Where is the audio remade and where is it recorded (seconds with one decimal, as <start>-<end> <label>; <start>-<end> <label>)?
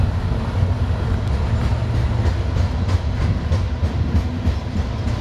0.0-5.2 recorded